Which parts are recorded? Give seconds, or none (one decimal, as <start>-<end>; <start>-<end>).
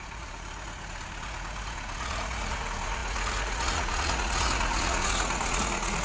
none